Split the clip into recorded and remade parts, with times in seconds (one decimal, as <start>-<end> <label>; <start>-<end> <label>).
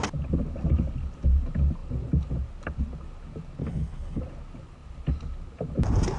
0.0-3.6 recorded; 3.6-4.2 remade; 4.2-6.2 recorded